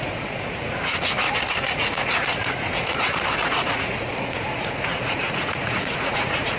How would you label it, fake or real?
fake